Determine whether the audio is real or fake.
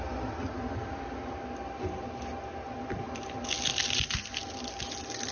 real